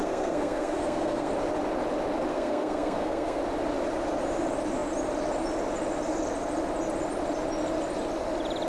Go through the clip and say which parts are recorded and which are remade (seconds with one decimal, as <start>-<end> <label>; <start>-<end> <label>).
0.0-1.3 remade; 1.3-2.3 recorded; 2.3-3.4 remade; 3.4-8.7 recorded